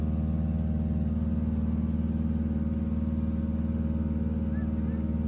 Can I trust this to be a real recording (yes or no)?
yes